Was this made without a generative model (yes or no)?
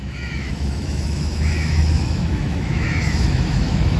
no